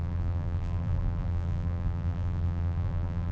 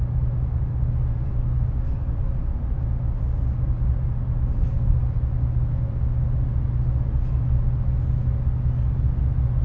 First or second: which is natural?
second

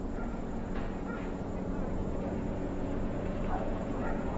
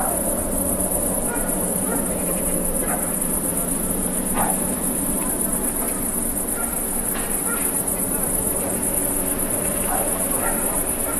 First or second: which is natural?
second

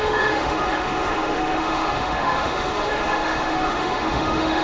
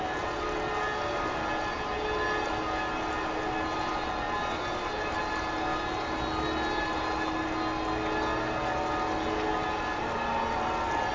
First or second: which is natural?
second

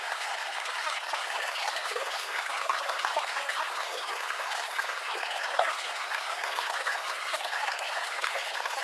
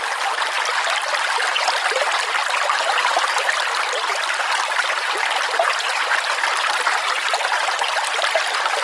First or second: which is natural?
second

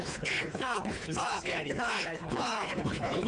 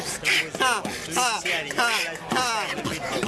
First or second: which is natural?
second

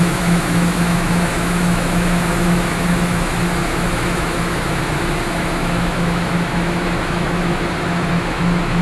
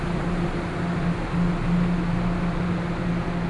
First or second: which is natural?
second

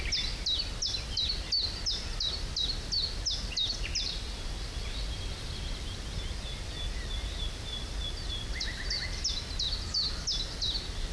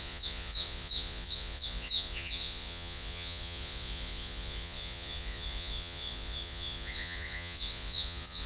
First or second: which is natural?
first